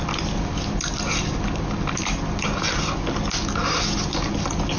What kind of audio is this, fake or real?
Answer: real